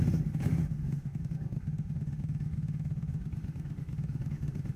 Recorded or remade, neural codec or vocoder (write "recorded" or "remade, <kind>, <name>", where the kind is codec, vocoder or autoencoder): remade, autoencoder, DAC-VAE